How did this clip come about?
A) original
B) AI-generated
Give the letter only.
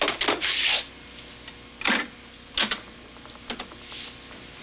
A